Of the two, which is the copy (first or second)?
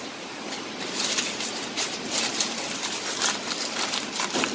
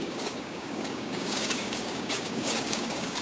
second